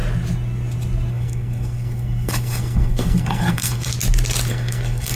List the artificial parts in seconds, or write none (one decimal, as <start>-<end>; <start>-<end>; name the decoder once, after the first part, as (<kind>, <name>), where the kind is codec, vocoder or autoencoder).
1.1-3.9 (codec, SNAC); 4.5-5.1